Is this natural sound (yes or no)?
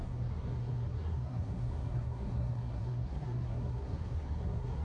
no